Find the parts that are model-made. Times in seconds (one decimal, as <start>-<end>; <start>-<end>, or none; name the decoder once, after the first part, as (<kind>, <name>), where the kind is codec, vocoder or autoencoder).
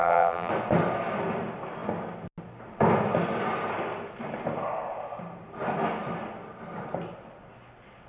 0.0-0.5 (vocoder, BigVGAN v2)